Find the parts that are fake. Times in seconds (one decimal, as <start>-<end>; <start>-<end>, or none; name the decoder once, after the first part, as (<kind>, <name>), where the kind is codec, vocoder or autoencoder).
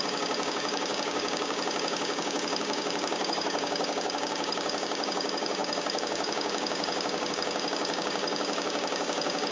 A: 0.0-9.5 (codec, DAC)